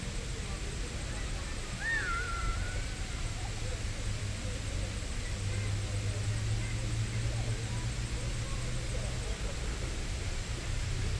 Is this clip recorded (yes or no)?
yes